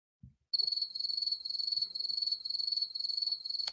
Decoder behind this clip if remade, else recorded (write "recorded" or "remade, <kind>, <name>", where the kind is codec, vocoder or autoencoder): recorded